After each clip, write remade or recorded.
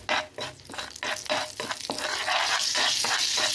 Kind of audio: recorded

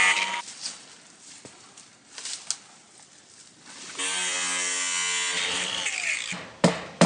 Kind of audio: recorded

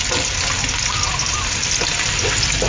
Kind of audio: recorded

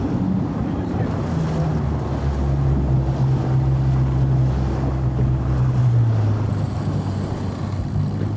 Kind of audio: recorded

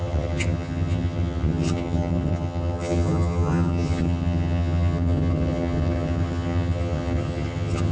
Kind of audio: remade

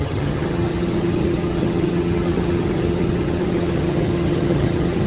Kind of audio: remade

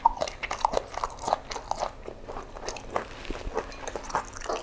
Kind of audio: recorded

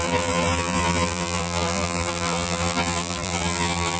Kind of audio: remade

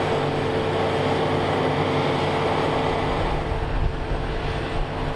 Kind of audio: recorded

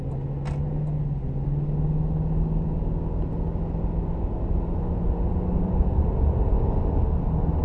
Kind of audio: recorded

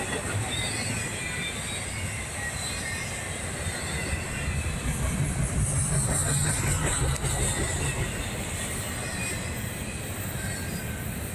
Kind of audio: recorded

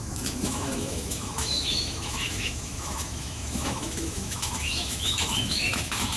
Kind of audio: remade